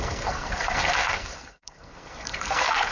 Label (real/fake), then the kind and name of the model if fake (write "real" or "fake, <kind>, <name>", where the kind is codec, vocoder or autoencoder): fake, codec, SNAC